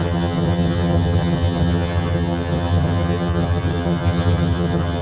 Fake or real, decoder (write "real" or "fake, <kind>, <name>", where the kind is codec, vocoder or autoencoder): fake, vocoder, HiFi-GAN